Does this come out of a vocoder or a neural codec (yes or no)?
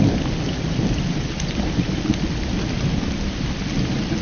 no